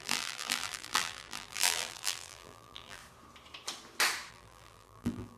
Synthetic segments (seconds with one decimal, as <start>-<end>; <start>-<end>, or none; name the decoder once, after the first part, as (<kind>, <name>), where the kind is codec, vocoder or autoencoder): 0.0-3.0 (vocoder, BigVGAN v2); 4.3-5.4